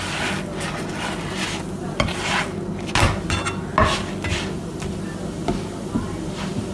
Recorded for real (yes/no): yes